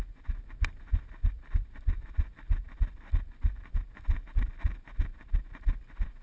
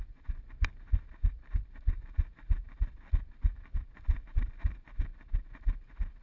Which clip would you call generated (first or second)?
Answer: second